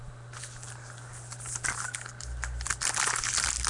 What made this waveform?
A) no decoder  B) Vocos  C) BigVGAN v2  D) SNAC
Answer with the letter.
C